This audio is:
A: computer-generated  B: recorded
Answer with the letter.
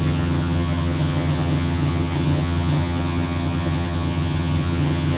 A